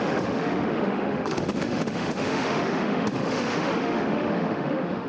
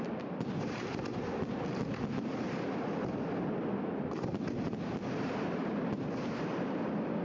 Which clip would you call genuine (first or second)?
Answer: second